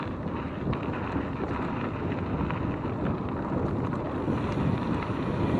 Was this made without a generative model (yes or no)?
yes